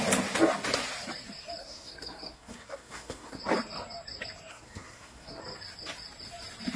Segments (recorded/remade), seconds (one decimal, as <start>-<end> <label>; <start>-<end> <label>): 0.0-1.6 recorded; 1.6-3.4 remade; 3.4-4.5 recorded; 4.5-5.4 remade; 5.4-6.8 recorded